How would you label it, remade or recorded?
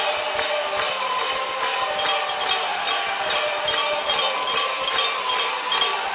recorded